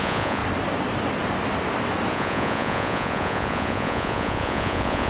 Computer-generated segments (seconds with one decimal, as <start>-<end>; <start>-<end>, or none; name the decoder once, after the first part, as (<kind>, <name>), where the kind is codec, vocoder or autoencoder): 0.0-0.4 (vocoder, Vocos); 2.1-5.1